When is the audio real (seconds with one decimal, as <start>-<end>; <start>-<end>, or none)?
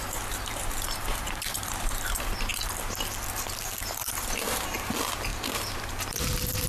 2.5-4.2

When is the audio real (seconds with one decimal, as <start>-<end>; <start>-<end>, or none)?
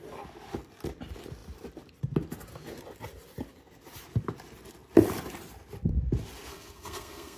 0.0-6.5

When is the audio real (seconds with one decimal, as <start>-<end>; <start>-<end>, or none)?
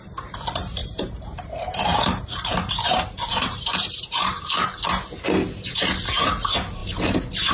0.0-0.8; 4.5-7.5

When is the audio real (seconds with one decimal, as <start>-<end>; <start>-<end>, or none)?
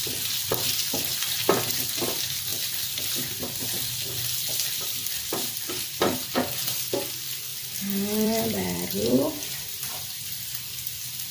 0.0-2.5; 5.3-7.5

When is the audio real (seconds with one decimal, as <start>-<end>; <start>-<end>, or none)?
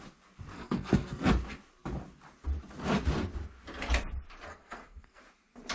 0.0-0.5; 1.3-4.5; 5.2-5.7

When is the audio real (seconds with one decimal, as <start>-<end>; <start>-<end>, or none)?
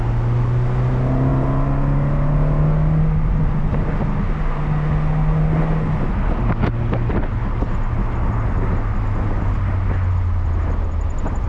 0.0-11.5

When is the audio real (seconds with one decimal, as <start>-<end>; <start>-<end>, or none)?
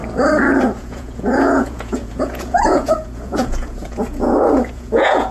0.0-0.8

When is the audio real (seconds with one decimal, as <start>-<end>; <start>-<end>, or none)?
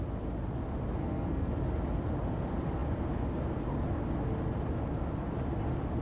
0.0-1.0; 1.5-6.0